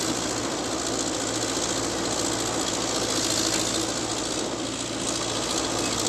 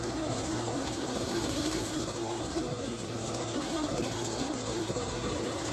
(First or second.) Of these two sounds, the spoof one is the second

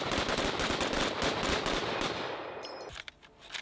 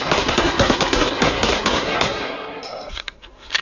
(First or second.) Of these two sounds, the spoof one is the second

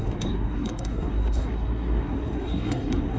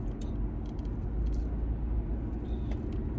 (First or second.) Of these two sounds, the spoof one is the first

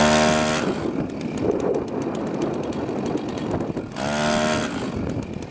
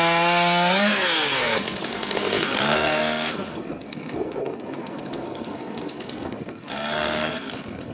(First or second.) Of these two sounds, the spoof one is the second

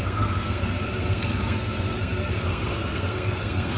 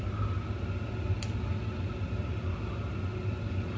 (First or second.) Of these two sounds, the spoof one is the first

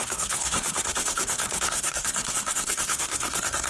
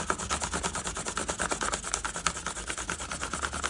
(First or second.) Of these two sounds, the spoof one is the first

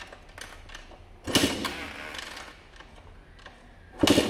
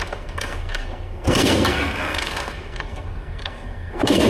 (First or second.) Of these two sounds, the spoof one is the second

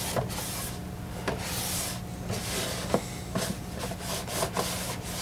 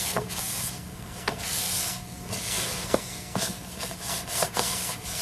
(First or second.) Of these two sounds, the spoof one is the second